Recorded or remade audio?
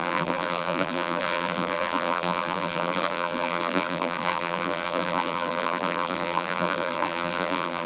remade